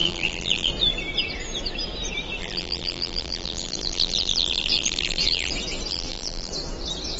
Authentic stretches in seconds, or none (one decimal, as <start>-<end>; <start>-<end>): 0.7-2.4; 5.5-5.9; 6.5-7.2